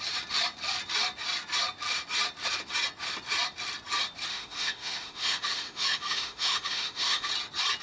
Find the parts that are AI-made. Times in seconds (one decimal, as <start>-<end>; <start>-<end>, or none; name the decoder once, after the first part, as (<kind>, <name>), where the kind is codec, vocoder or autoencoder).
4.3-7.3 (autoencoder, DAC-VAE)